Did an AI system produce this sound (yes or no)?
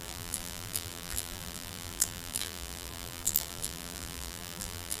yes